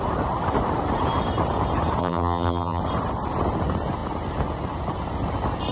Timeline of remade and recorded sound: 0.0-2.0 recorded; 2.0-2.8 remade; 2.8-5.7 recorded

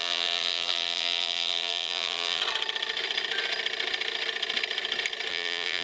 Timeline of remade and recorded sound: 0.0-2.4 remade; 2.4-5.3 recorded; 5.3-5.8 remade

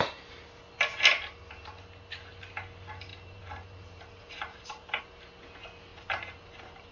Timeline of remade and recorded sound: 0.0-3.1 recorded; 3.1-5.0 remade; 5.0-5.9 recorded; 5.9-6.9 remade

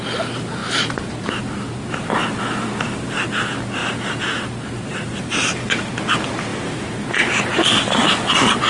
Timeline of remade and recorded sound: 0.0-0.6 recorded; 0.6-1.3 remade; 1.3-3.8 recorded; 3.8-5.8 remade; 5.8-6.5 recorded; 6.5-7.8 remade; 7.8-8.7 recorded

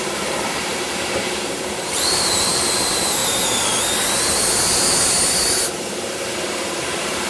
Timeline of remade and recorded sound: 0.0-3.2 remade; 3.2-6.8 recorded; 6.8-7.3 remade